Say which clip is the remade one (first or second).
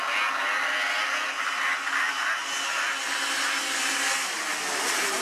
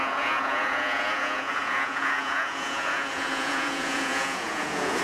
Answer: second